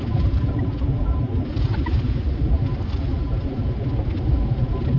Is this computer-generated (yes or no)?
no